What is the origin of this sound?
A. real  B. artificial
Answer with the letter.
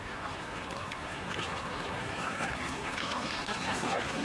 B